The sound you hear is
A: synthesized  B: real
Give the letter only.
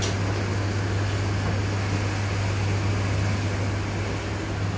B